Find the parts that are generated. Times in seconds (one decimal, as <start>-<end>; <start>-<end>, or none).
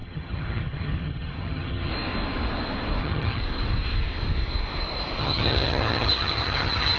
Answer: 0.0-1.9; 3.0-3.4; 5.2-7.0